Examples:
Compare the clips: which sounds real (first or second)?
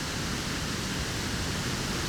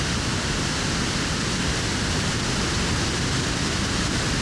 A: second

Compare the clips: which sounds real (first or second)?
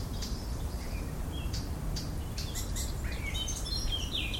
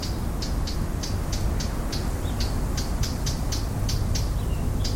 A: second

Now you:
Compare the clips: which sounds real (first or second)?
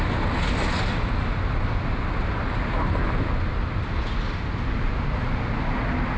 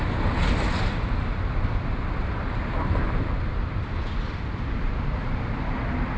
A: first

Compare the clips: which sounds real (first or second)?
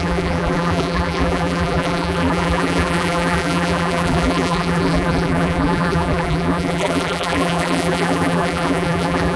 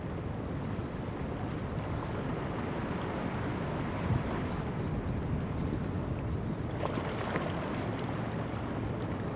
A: second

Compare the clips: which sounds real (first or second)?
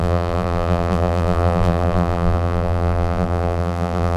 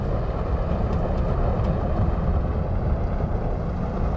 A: second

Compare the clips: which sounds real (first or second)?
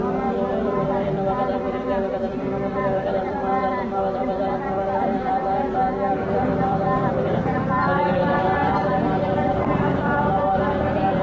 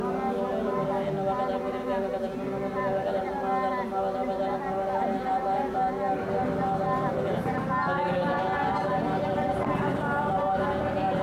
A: second